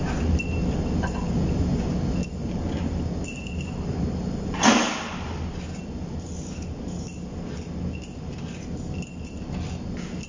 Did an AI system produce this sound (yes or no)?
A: no